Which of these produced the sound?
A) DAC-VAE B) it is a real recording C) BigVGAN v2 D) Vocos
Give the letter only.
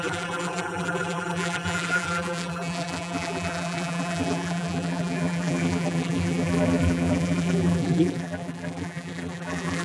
C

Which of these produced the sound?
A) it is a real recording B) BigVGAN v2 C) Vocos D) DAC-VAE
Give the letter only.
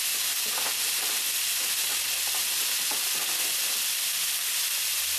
A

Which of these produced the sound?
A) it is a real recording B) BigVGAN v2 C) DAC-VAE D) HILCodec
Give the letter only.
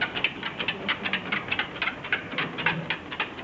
A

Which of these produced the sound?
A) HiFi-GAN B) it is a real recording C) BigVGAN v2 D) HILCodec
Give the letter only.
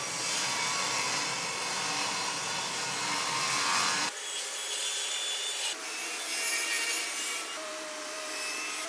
C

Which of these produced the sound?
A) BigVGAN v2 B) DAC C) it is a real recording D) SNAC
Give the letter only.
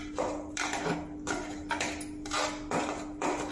C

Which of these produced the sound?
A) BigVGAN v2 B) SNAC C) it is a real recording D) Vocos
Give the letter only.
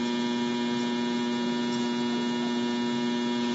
C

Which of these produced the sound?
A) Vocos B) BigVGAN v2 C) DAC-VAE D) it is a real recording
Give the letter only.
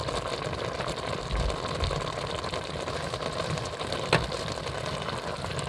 D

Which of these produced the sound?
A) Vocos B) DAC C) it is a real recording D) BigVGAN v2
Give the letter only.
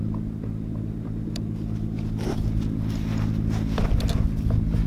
C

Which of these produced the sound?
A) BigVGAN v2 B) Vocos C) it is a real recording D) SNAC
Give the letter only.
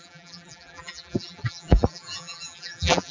A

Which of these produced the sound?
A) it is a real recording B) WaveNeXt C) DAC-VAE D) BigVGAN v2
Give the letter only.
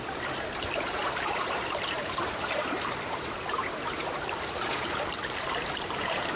D